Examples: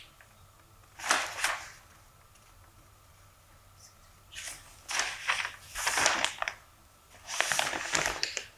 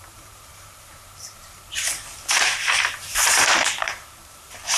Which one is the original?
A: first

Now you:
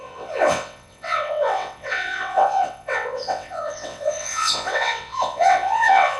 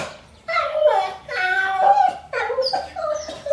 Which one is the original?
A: second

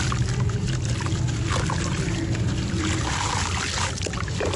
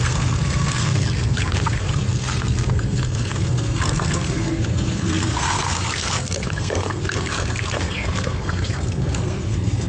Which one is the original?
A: first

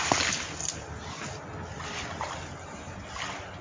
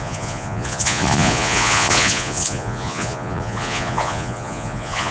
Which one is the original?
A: first